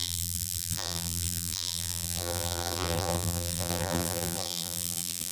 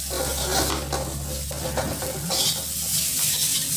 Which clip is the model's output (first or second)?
first